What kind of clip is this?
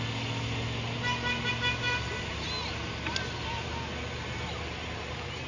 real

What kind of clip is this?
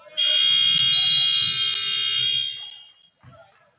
real